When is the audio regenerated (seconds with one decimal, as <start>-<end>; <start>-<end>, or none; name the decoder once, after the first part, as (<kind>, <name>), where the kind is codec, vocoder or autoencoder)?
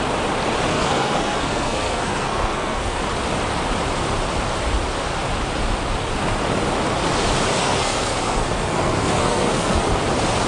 0.7-3.0 (codec, SNAC); 7.6-9.9